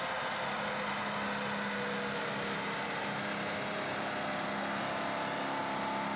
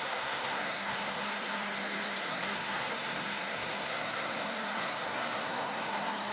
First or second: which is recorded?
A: first